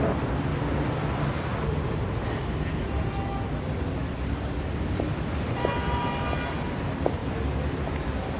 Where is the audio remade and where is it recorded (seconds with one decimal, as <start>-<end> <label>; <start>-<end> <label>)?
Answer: 0.0-0.5 remade; 0.5-3.6 recorded; 3.6-8.4 remade